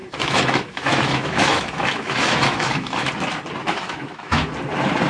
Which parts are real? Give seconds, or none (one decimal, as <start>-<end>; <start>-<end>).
3.1-3.6; 4.5-5.1